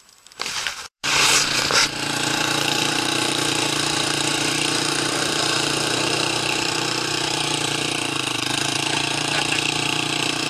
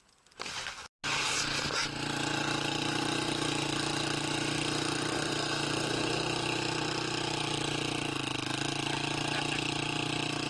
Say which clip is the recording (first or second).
second